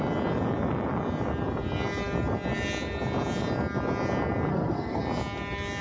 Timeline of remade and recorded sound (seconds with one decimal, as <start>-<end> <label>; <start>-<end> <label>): 0.0-4.5 recorded; 4.5-5.0 remade; 5.0-5.8 recorded